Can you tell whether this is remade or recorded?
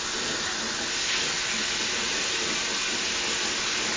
recorded